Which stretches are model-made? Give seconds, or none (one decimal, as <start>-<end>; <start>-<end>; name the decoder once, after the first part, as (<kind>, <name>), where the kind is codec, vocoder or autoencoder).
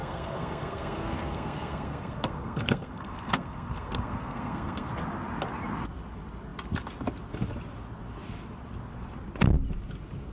0.0-4.9 (codec, SNAC)